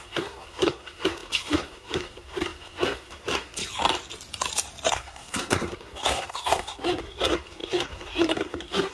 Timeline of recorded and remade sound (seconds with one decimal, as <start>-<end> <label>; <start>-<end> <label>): 0.0-3.6 remade; 3.6-4.9 recorded; 4.9-8.9 remade